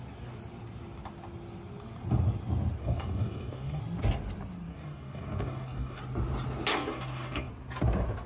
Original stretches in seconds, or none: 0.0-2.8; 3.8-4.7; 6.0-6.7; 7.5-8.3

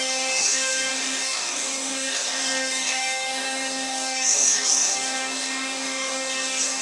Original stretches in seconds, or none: none

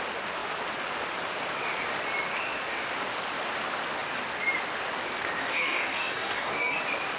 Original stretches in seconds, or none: 0.0-5.4; 6.8-7.2

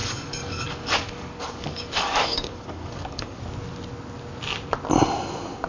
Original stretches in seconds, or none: 3.4-5.7

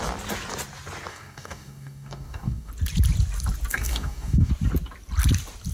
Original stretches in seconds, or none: 0.0-1.1; 2.7-3.7; 4.5-5.7

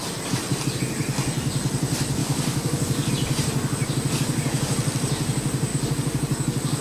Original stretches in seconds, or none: 0.0-2.2; 3.1-5.7